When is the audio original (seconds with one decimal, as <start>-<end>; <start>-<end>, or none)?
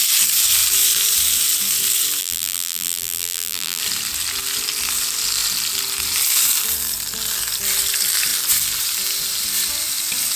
0.0-2.2; 3.8-10.4